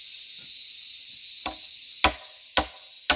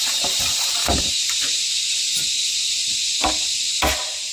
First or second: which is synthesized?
second